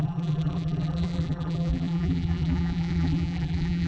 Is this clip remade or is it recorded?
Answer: remade